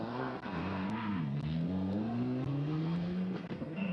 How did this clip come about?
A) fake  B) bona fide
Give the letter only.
A